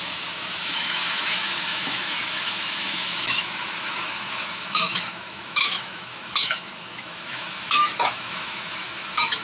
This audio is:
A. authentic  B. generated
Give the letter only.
B